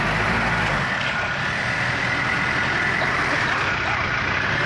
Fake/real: real